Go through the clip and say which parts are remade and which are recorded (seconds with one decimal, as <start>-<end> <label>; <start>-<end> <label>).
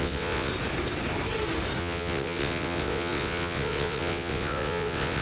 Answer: 0.0-0.5 remade; 0.5-1.8 recorded; 1.8-5.2 remade